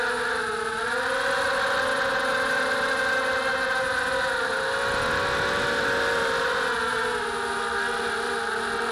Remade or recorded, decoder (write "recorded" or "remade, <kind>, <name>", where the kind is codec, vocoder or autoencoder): recorded